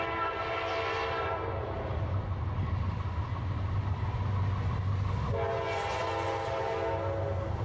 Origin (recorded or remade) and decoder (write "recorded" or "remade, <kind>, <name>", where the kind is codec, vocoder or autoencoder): recorded